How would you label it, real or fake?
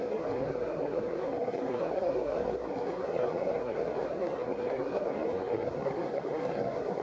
fake